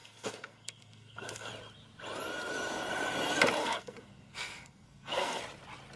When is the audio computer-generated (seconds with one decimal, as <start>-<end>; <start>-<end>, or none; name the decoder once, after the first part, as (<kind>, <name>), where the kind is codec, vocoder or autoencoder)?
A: 0.0-1.5 (codec, SNAC); 3.6-5.4

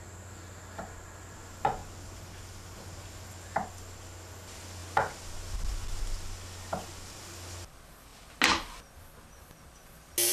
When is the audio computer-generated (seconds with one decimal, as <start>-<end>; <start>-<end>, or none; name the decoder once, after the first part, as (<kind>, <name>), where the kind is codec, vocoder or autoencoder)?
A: none

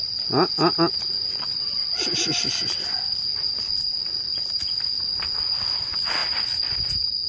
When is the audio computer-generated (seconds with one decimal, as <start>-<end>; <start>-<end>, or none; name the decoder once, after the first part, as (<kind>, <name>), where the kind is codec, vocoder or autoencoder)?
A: none

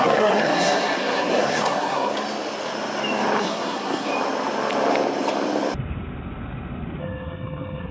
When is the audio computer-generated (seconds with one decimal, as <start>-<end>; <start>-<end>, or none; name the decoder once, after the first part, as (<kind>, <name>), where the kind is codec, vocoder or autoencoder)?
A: 0.0-2.1 (codec, SNAC); 3.4-4.1; 7.0-7.9

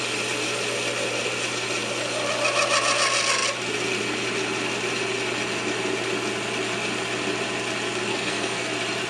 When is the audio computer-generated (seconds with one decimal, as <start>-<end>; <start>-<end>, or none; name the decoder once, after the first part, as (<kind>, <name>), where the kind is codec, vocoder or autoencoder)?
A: 8.1-8.7 (codec, SNAC)

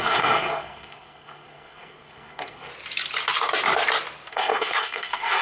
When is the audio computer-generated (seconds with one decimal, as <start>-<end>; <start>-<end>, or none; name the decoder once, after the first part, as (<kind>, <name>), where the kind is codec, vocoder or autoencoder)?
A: 0.0-2.7 (codec, SNAC); 4.3-5.4

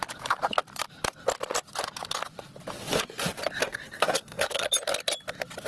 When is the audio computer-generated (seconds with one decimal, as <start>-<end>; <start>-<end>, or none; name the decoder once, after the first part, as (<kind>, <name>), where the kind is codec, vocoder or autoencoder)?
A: 3.6-4.7 (codec, SNAC)

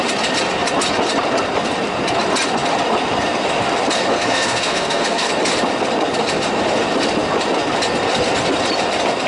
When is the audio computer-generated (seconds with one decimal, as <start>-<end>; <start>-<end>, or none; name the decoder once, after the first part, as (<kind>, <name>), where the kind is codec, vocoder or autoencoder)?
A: 4.1-5.3 (codec, SNAC)